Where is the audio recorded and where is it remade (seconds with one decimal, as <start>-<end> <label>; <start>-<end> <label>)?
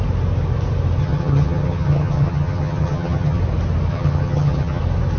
0.0-1.0 recorded; 1.0-3.4 remade; 3.4-3.9 recorded; 3.9-4.8 remade; 4.8-5.2 recorded